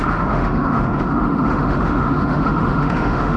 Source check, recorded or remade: remade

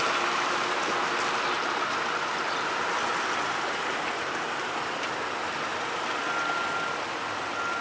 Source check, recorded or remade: recorded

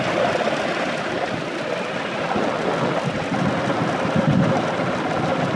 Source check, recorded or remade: recorded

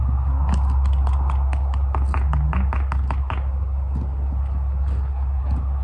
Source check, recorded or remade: recorded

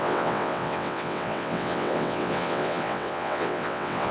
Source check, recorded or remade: remade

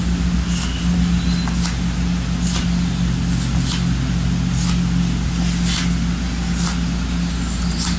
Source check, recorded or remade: recorded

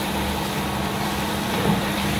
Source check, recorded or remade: remade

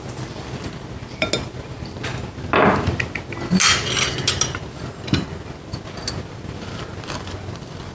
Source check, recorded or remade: recorded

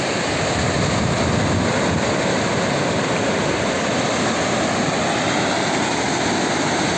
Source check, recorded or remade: recorded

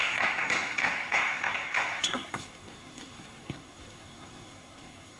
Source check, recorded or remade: remade